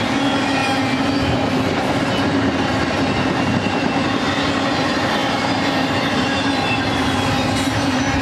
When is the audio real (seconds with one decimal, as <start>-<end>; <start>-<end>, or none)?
0.0-8.2